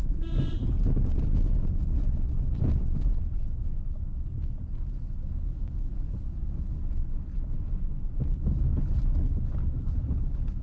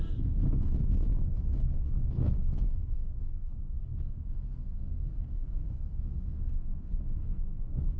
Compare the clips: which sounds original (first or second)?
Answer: first